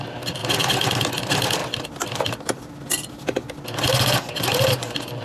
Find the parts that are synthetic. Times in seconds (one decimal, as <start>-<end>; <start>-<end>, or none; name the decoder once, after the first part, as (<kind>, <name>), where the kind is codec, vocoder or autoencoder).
none